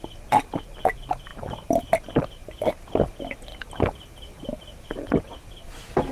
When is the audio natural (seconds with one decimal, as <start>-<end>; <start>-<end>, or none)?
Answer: 0.0-1.3; 2.0-3.5; 5.2-6.1